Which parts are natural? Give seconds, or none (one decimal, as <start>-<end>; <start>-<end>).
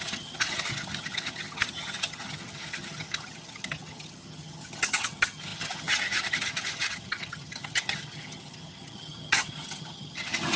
none